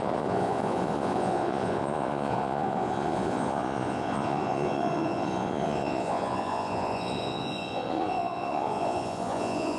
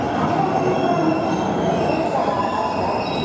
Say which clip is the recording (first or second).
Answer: second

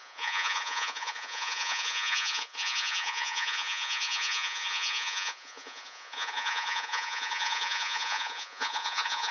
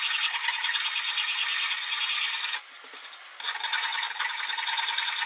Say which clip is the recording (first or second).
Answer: second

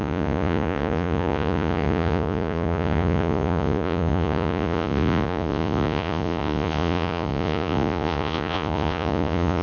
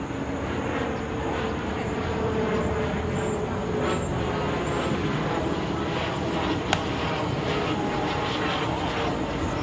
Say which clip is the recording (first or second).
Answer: second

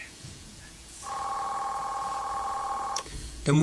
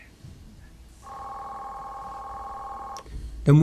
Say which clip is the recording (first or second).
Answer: second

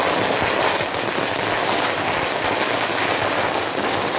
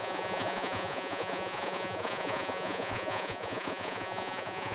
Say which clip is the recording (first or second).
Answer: first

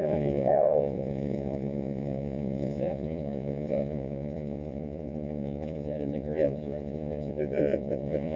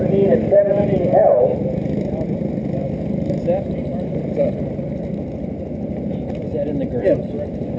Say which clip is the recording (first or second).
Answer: second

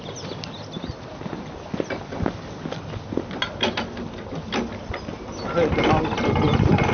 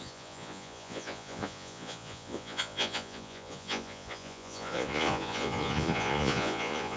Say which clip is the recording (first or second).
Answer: first